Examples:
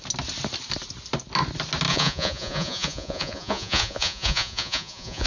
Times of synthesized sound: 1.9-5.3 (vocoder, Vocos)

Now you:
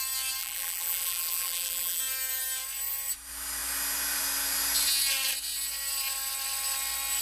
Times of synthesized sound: 0.4-2.0 (vocoder, BigVGAN v2)

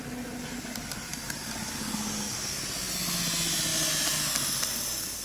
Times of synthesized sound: 1.1-2.6 (codec, DAC)

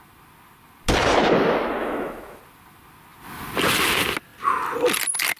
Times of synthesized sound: 1.8-2.4 (autoencoder, DAC-VAE)

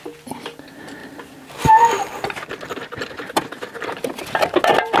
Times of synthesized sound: 1.0-4.0 (vocoder, BigVGAN v2)

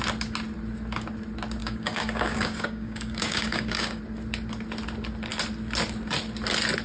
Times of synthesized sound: 1.6-4.0 (codec, DAC)

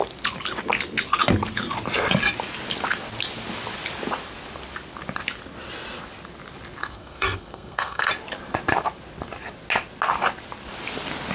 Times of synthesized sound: 6.8-8.1 (codec, SNAC)